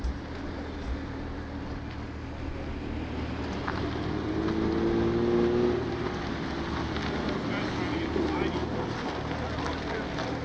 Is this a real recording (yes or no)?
yes